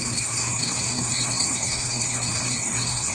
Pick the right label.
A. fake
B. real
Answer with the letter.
A